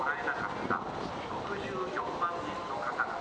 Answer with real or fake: real